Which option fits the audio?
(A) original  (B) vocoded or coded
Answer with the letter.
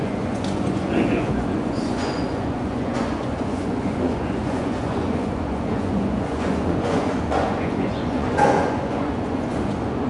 B